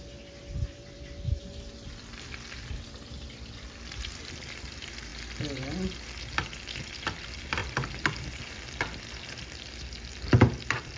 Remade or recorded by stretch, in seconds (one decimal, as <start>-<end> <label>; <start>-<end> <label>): 0.0-5.1 remade; 5.1-6.8 recorded; 6.8-11.0 remade